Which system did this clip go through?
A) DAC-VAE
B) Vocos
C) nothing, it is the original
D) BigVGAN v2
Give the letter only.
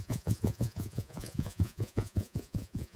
B